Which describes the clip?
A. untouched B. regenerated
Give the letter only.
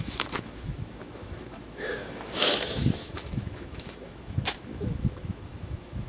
B